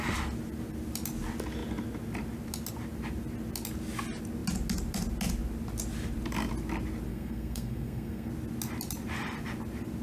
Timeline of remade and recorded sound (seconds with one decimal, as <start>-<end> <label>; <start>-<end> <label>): 0.0-7.1 recorded; 7.1-8.3 remade; 8.3-10.0 recorded